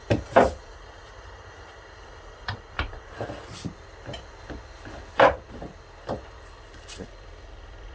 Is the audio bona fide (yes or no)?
no